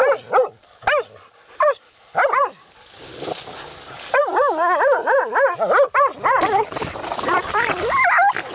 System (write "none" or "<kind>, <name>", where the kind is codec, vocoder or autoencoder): none